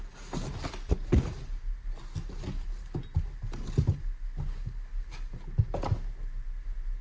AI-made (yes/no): no